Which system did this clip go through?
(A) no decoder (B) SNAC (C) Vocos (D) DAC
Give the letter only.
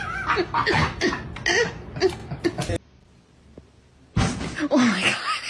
A